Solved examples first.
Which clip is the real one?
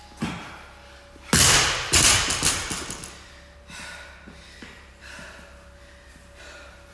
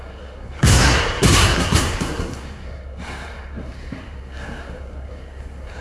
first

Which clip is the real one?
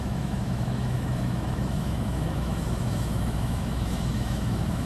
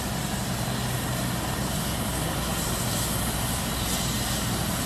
second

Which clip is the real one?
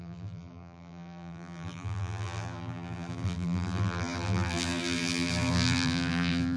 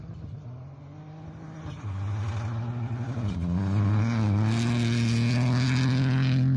second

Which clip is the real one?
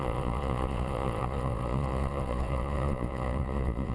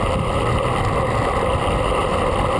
second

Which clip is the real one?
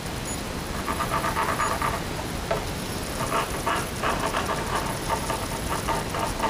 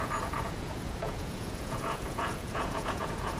first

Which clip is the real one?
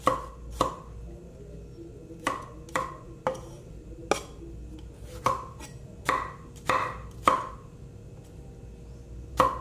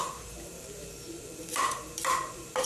first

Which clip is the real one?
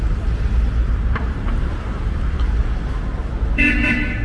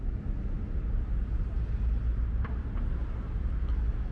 second